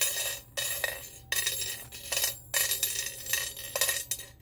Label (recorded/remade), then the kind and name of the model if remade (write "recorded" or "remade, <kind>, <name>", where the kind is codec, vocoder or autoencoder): recorded